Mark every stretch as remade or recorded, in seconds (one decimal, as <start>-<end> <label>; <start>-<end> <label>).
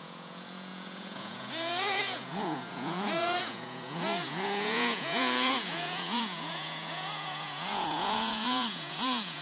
0.0-9.4 remade